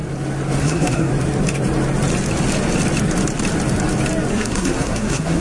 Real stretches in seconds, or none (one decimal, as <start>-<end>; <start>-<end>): 0.0-0.6; 1.1-4.3